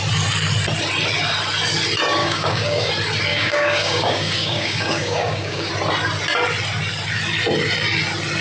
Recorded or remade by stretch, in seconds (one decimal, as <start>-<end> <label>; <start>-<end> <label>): 0.0-2.2 recorded; 2.2-2.9 remade; 2.9-3.3 recorded; 3.3-5.7 remade; 5.7-8.4 recorded